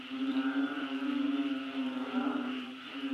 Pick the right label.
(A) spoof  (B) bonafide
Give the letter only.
A